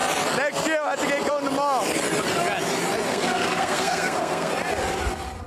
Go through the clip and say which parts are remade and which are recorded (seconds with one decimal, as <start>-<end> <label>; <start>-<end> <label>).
0.0-3.1 recorded; 3.1-4.5 remade; 4.5-5.5 recorded